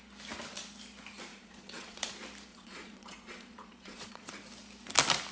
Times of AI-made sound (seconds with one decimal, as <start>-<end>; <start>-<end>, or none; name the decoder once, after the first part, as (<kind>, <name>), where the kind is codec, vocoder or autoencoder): 1.3-2.1 (vocoder, Vocos); 2.5-4.3